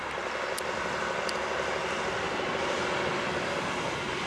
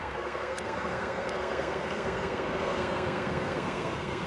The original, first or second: first